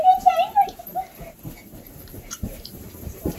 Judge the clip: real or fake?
fake